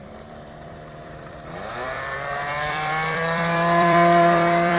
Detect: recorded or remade remade